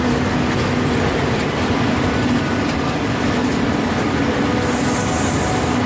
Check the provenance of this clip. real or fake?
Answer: real